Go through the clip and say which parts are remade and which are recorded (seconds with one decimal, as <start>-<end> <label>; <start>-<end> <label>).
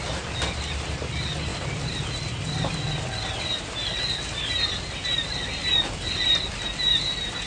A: 0.0-7.5 recorded